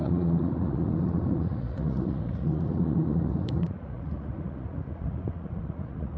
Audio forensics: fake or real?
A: fake